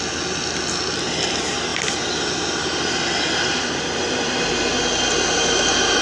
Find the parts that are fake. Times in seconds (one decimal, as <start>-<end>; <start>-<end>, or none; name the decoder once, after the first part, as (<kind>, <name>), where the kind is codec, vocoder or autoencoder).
none